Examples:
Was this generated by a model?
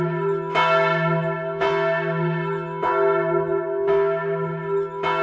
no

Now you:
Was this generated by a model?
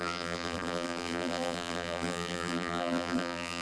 yes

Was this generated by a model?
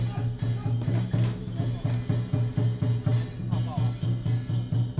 no